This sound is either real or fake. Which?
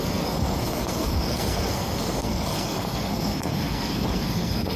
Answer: fake